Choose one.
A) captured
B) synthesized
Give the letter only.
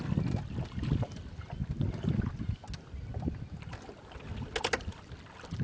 A